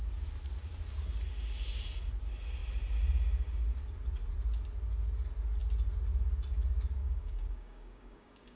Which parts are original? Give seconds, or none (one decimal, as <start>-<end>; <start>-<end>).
0.0-7.0